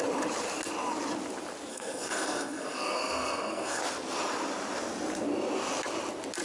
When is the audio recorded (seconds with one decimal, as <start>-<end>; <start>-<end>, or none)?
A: 0.0-1.7; 3.8-6.4